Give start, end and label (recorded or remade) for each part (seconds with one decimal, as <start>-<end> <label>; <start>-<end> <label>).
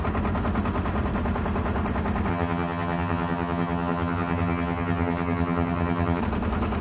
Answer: 0.0-2.3 recorded; 2.3-6.2 remade; 6.2-6.8 recorded